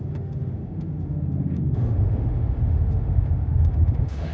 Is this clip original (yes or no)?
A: no